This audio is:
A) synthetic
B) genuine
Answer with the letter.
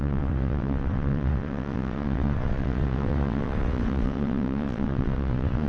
A